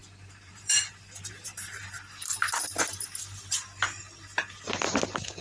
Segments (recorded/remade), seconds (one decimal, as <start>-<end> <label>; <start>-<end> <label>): 0.0-3.2 remade; 3.2-5.4 recorded